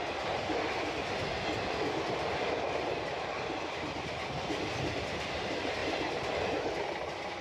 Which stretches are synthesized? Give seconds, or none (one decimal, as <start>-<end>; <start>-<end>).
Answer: none